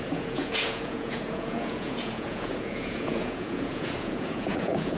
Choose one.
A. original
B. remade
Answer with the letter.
B